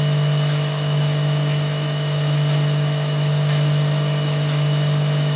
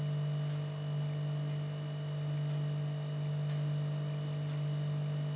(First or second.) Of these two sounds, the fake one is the first